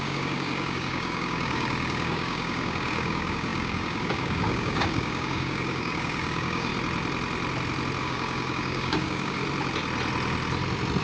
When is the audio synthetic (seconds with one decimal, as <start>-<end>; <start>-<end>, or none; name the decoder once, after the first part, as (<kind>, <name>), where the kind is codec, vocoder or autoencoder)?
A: 0.0-6.7 (codec, DAC); 8.0-9.4

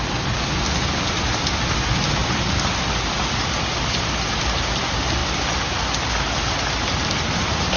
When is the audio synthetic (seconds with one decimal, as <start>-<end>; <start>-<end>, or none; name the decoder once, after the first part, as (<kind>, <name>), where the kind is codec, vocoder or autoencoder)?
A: 2.2-4.0 (vocoder, BigVGAN v2); 5.2-6.1

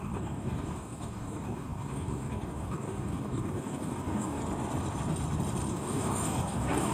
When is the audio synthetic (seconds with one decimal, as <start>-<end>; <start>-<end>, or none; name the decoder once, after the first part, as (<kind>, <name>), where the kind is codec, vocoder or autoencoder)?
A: 0.0-4.4 (codec, DAC); 5.7-6.9

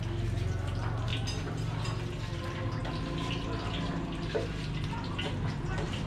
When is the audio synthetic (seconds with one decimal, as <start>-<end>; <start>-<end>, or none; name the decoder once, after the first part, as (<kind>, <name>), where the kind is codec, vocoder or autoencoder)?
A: none